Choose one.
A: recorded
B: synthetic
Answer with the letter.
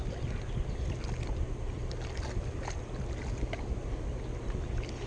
A